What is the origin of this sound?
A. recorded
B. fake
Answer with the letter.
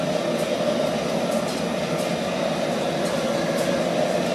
A